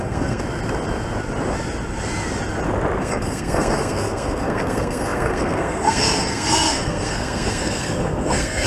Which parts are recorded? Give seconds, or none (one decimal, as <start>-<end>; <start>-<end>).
0.4-3.0